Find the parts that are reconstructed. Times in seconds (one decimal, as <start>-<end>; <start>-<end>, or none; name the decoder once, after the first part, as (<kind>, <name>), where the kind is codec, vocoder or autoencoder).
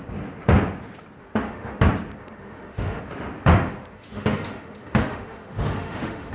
1.2-1.8 (autoencoder, DAC-VAE); 2.2-3.0; 3.5-6.3